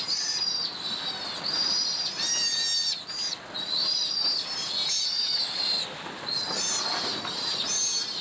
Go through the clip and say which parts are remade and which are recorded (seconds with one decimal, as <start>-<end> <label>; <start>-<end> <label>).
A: 0.0-8.2 recorded